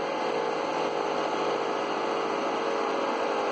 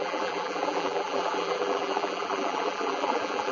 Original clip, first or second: first